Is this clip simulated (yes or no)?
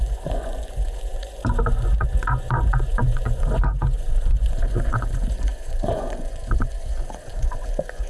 yes